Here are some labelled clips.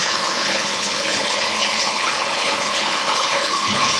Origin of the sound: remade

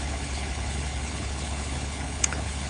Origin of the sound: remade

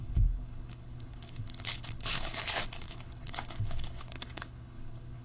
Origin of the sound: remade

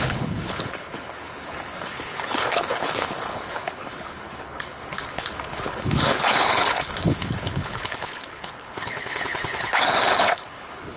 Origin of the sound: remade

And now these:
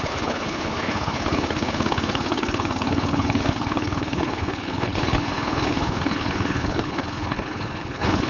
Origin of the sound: remade